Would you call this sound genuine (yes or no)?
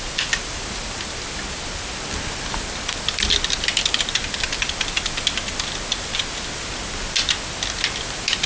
yes